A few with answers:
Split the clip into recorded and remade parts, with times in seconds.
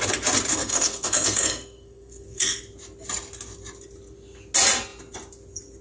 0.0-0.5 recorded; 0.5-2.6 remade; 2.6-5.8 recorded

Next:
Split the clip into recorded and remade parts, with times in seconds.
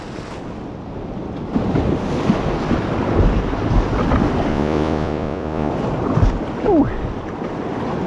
0.0-4.5 recorded; 4.5-5.7 remade; 5.7-8.1 recorded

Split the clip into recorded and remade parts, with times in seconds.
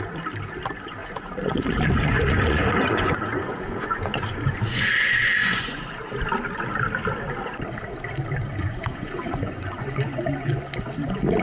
0.0-1.0 recorded; 1.0-5.8 remade; 5.8-8.6 recorded; 8.6-10.7 remade; 10.7-11.4 recorded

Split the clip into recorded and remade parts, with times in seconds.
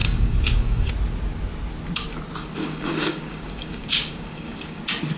0.0-0.9 remade; 0.9-2.6 recorded; 2.6-4.8 remade; 4.8-5.2 recorded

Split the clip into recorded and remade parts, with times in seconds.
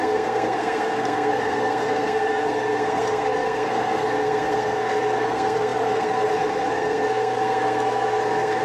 0.0-8.6 remade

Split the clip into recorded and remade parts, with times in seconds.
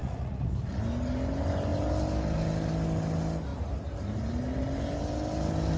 0.0-0.8 remade; 0.8-5.8 recorded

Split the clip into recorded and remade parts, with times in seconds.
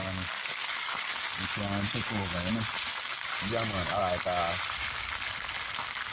0.0-2.5 remade; 2.5-2.9 recorded; 2.9-4.0 remade; 4.0-6.1 recorded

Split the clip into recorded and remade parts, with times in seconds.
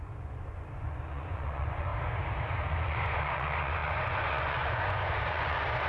0.0-1.9 remade; 1.9-2.7 recorded; 2.7-5.9 remade